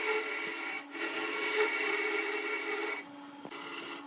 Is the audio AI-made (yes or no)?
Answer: no